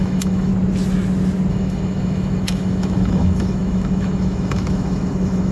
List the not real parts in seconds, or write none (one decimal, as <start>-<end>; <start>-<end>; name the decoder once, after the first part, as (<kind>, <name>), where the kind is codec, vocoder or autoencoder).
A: 0.0-0.5 (autoencoder, DAC-VAE); 1.5-5.5